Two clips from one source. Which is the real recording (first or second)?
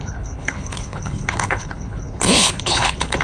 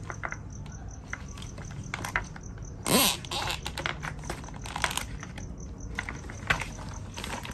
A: second